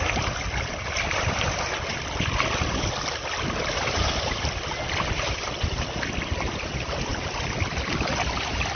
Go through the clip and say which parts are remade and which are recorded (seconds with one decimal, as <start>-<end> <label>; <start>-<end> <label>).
0.0-8.8 recorded